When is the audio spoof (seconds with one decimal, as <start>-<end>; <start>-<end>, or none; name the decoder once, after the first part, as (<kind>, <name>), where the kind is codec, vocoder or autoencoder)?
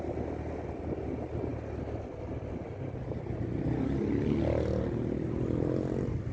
none